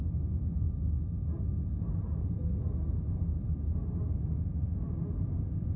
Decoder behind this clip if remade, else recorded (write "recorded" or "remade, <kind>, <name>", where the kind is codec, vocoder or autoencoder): recorded